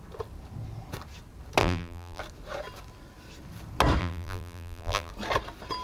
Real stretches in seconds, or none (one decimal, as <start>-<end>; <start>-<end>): 0.0-1.6; 2.2-4.0; 5.1-5.8